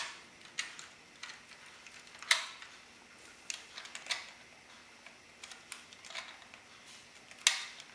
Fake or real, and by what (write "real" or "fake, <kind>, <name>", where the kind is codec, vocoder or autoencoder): real